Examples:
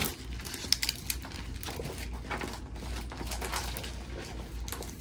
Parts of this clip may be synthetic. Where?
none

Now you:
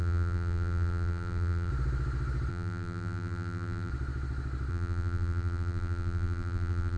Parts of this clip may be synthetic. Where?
0.0-1.7; 2.5-3.9; 4.7-7.0

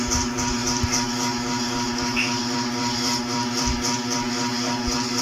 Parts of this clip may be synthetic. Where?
none

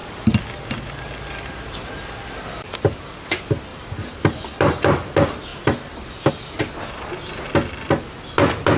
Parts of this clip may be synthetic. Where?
3.7-4.8; 5.5-6.3

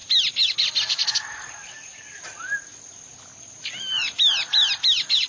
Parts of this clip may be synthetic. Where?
3.2-5.3

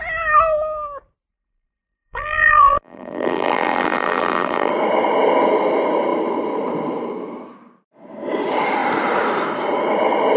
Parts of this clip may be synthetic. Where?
1.3-4.7

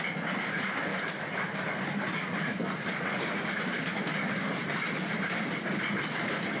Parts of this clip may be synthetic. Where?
none

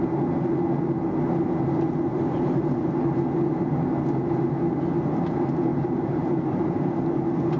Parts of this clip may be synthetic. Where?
2.1-2.9; 5.7-6.9